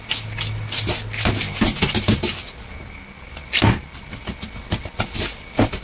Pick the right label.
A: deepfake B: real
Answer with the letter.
B